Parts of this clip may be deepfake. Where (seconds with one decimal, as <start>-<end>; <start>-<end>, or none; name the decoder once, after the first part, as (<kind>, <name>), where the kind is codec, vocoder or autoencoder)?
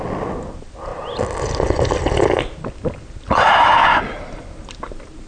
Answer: none